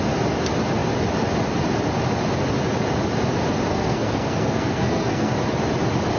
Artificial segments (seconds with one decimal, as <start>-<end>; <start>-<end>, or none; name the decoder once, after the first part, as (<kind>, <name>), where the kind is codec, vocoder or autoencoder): 3.7-5.3 (codec, SNAC)